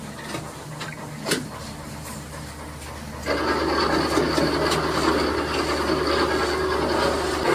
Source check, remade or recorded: recorded